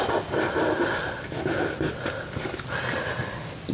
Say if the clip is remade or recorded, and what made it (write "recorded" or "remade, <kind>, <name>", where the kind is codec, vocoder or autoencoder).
recorded